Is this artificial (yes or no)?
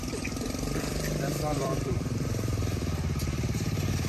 yes